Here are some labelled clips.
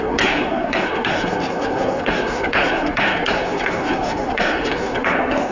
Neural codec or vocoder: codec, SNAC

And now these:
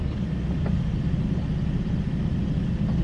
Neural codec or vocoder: none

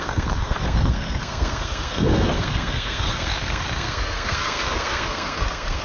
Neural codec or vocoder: codec, SNAC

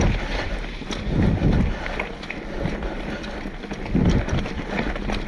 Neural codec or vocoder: none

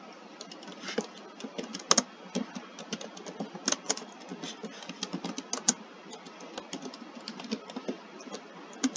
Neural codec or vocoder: none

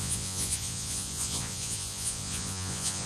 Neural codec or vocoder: vocoder, Vocos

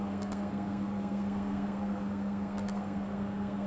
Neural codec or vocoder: codec, SNAC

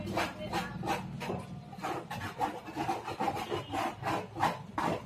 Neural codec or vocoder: none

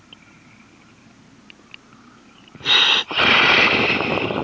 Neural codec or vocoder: none